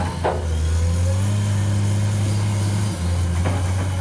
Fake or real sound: real